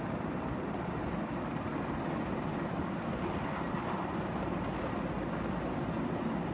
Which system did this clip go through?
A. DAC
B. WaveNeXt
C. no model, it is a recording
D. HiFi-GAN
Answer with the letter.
C